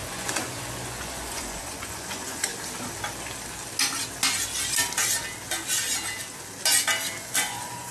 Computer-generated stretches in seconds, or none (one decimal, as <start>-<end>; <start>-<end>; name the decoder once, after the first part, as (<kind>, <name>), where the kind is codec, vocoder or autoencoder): 0.0-2.5 (vocoder, Vocos); 7.2-7.9